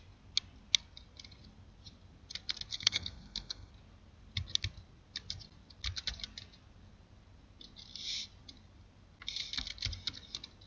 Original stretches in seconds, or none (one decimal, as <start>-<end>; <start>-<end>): 0.0-2.7; 3.7-10.7